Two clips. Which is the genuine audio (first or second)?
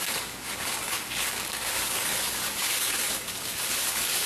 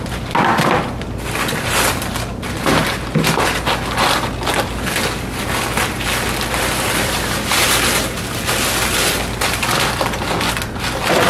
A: second